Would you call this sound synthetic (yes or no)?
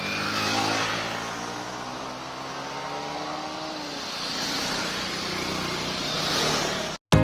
no